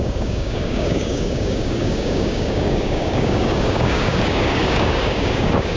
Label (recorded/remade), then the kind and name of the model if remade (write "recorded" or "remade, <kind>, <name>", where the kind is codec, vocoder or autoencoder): remade, codec, DAC